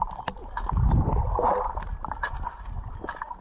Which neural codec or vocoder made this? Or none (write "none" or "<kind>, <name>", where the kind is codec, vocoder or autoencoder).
none